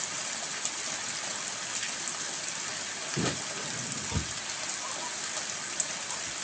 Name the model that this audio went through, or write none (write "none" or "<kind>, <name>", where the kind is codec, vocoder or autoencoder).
none